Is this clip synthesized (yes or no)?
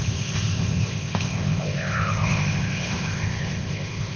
yes